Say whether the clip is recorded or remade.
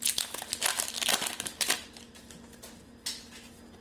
recorded